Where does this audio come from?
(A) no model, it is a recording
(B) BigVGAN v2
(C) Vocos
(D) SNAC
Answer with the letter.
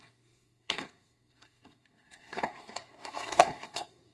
D